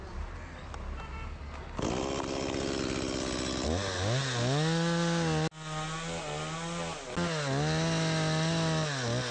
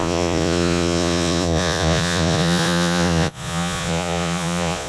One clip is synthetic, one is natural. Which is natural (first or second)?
first